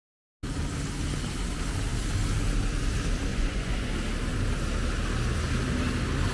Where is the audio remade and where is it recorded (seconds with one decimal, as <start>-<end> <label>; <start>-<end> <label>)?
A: 0.0-3.3 recorded; 3.3-3.9 remade; 3.9-6.3 recorded